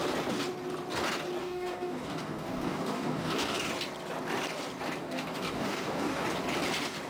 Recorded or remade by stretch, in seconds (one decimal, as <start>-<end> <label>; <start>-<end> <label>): 0.0-1.4 recorded; 1.4-3.7 remade; 3.7-5.0 recorded; 5.0-6.2 remade; 6.2-7.1 recorded